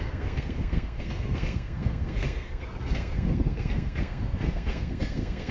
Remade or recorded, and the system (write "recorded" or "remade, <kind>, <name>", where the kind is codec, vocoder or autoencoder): remade, codec, SNAC